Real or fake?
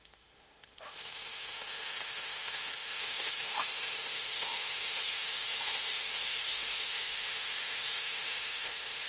fake